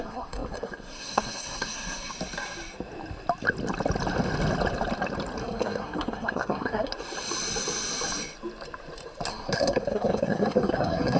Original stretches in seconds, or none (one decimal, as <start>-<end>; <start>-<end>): 2.1-5.4; 6.9-9.3